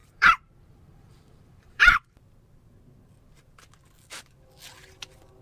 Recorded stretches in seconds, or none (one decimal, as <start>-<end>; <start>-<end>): 0.5-0.9; 2.2-5.4